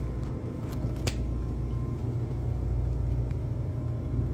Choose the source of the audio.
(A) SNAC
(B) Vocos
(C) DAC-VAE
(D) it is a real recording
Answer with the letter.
D